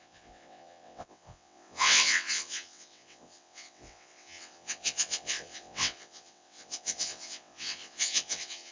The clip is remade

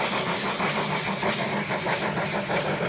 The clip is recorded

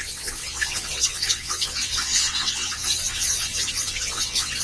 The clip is remade